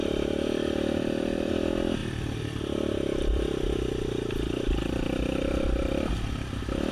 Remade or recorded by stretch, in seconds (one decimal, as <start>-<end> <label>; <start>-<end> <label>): 0.0-1.5 remade; 1.5-2.0 recorded; 2.0-6.1 remade; 6.1-6.9 recorded